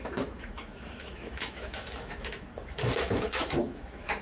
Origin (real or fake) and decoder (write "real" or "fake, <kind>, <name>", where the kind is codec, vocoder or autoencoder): fake, autoencoder, DAC-VAE